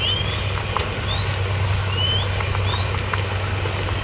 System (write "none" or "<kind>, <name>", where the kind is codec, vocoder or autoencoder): none